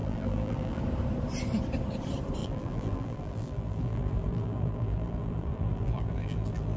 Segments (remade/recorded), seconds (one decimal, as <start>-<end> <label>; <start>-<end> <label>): 0.0-0.8 remade; 0.8-2.4 recorded; 2.4-6.8 remade